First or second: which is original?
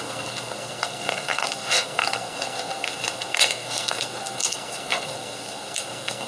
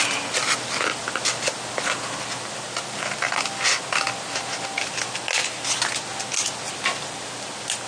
second